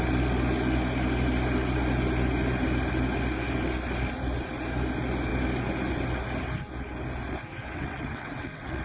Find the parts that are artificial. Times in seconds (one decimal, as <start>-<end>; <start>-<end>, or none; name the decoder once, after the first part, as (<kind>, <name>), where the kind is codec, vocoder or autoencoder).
7.5-8.8 (vocoder, WaveNeXt)